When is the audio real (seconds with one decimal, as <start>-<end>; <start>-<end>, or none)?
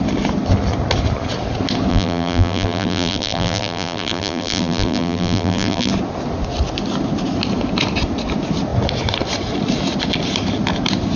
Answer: 0.0-1.9; 5.9-11.2